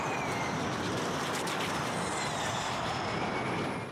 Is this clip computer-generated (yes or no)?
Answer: no